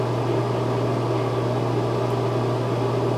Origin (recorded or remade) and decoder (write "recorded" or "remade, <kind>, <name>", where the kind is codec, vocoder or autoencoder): recorded